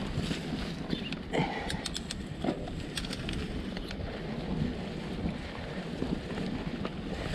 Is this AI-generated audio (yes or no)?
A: no